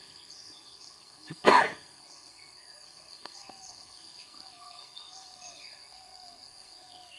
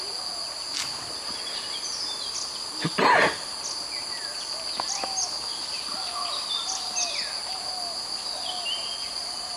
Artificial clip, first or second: first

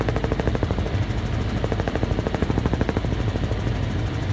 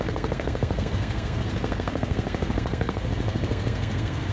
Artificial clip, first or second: second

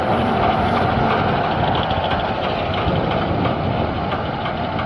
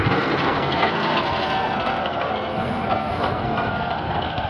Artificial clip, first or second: second